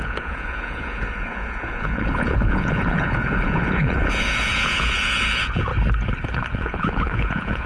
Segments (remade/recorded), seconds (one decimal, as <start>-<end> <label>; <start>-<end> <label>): 0.0-5.7 remade; 5.7-6.5 recorded; 6.5-7.7 remade

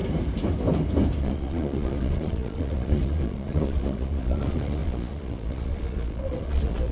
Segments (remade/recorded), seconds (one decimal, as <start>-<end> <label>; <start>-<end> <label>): 0.0-1.2 recorded; 1.2-6.9 remade